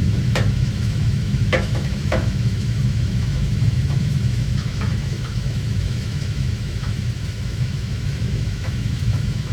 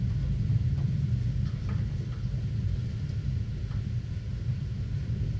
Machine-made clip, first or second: first